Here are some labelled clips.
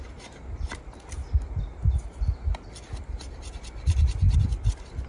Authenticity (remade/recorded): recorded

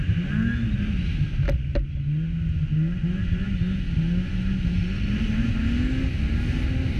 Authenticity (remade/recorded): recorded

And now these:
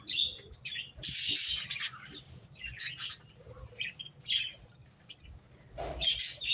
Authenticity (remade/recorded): recorded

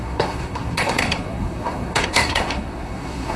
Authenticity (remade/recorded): remade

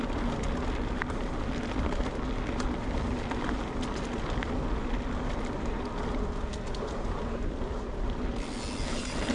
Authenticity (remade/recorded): recorded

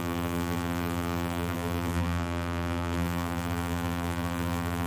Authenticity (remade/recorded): remade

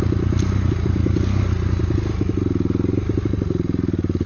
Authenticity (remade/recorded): recorded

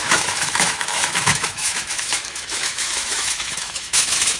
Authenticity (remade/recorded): remade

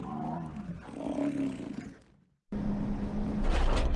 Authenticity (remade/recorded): recorded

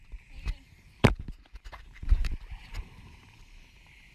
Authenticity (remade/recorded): remade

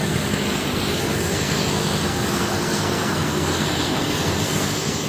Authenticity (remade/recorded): remade